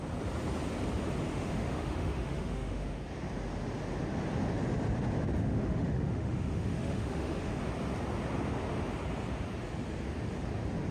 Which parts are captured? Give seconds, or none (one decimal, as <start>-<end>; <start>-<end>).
0.0-1.3; 3.0-5.4; 7.6-10.9